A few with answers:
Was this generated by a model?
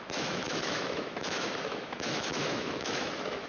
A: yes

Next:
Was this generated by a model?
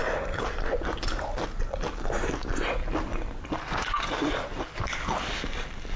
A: no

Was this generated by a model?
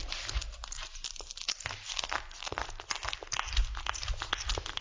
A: no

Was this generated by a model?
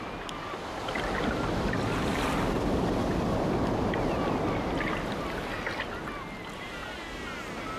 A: no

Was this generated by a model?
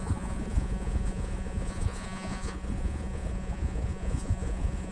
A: yes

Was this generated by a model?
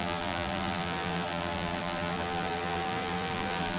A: yes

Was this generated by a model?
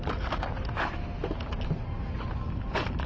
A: no